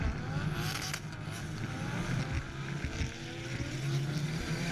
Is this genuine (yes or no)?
yes